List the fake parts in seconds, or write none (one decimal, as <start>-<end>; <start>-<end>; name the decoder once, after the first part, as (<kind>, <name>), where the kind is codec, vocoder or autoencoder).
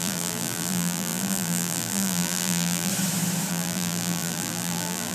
0.0-2.9 (vocoder, BigVGAN v2); 3.5-5.1